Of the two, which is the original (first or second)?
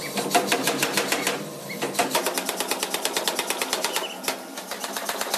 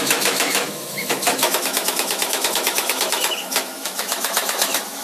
first